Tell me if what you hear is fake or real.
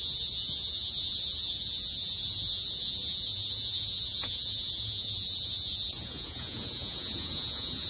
fake